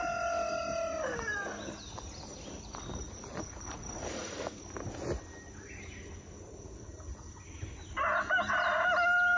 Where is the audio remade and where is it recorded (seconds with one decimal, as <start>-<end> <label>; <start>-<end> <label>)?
0.0-2.9 recorded; 2.9-4.6 remade; 4.6-9.4 recorded